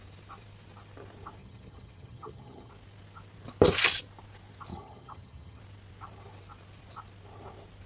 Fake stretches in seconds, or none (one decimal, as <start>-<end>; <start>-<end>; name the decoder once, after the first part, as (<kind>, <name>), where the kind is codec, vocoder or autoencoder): 1.4-2.7 (vocoder, HiFi-GAN); 4.7-5.6